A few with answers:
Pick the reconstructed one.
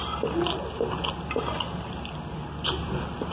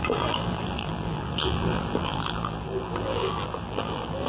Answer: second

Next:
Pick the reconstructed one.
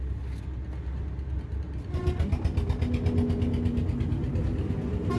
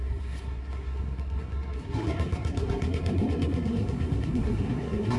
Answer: second